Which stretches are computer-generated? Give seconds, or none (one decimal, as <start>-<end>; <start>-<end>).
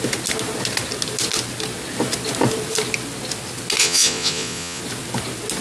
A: 3.8-4.8